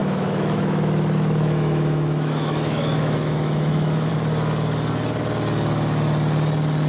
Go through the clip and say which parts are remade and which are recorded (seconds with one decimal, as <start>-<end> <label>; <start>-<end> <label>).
0.0-4.1 remade; 4.1-6.9 recorded